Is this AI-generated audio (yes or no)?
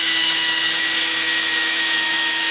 yes